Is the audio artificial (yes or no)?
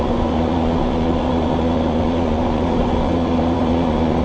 yes